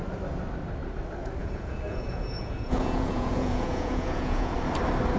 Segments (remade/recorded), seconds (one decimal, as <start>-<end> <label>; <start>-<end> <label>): 0.0-1.4 recorded; 1.4-4.5 remade; 4.5-5.2 recorded